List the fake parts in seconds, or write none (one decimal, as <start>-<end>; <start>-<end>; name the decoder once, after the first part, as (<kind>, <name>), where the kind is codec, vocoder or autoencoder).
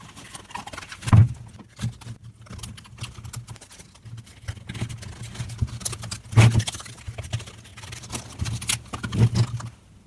none